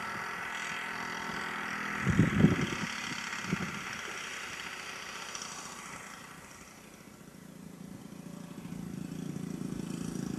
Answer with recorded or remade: recorded